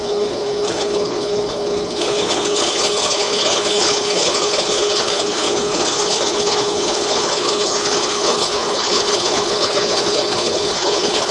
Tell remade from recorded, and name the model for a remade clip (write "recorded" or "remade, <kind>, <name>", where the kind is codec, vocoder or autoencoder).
remade, codec, HILCodec